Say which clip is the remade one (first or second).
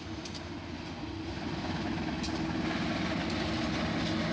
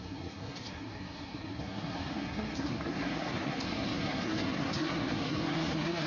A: second